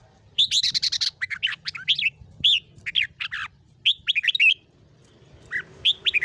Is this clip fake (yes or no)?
no